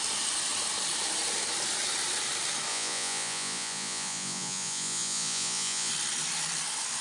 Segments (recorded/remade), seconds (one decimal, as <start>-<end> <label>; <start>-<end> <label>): 0.0-2.7 recorded; 2.7-5.9 remade; 5.9-7.0 recorded

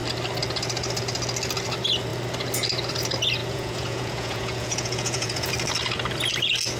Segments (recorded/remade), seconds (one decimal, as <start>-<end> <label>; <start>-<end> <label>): 0.0-3.4 recorded; 3.4-5.5 remade; 5.5-6.8 recorded

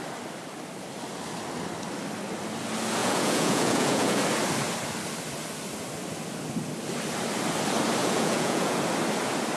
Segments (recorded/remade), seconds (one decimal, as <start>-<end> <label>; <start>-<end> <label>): 0.0-3.0 recorded; 3.0-4.2 remade; 4.2-8.0 recorded; 8.0-8.8 remade; 8.8-9.6 recorded

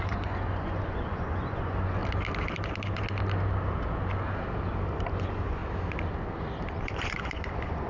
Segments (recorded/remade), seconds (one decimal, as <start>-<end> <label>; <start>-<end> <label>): 0.0-2.0 remade; 2.0-5.1 recorded; 5.1-5.6 remade; 5.6-6.8 recorded; 6.8-7.9 remade

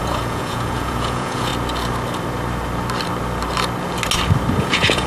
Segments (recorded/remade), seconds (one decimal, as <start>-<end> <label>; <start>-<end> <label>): 0.0-1.5 remade; 1.5-4.6 recorded; 4.6-5.1 remade

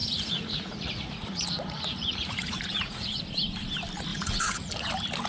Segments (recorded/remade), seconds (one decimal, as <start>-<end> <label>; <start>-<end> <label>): 0.0-3.2 remade; 3.2-4.1 recorded; 4.1-4.7 remade; 4.7-5.3 recorded